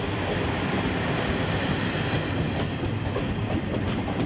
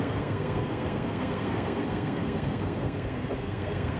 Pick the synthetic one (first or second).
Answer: second